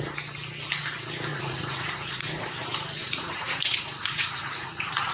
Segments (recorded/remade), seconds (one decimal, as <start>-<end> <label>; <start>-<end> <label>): 0.0-1.3 recorded; 1.3-2.5 remade; 2.5-3.0 recorded; 3.0-5.1 remade